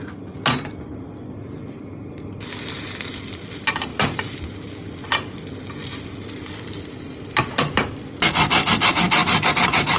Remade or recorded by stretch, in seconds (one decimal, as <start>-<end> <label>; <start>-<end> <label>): 0.0-10.0 recorded

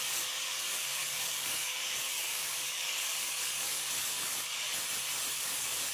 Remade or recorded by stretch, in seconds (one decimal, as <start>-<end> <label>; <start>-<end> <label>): 0.0-4.7 remade; 4.7-5.3 recorded; 5.3-5.9 remade

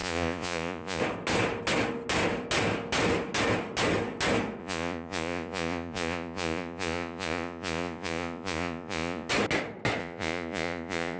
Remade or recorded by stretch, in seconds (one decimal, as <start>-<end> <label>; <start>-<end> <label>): 0.0-1.0 remade; 1.0-4.6 recorded; 4.6-9.3 remade; 9.3-10.0 recorded; 10.0-11.2 remade